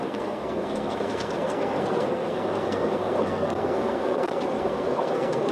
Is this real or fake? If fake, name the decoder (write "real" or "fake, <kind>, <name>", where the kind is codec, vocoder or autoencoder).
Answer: fake, codec, SNAC